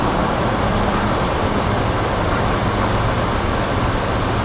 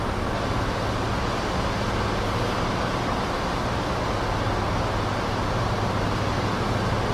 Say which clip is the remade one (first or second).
first